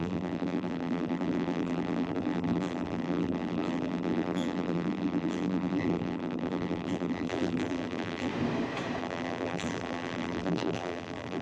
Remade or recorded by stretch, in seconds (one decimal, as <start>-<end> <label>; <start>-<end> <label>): 0.0-8.3 remade; 8.3-9.0 recorded; 9.0-11.4 remade